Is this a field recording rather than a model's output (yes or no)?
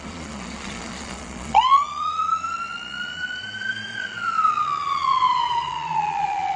no